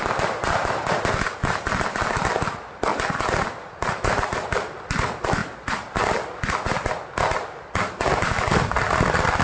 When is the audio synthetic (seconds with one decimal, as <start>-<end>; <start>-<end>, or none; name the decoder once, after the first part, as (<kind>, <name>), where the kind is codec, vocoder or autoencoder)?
none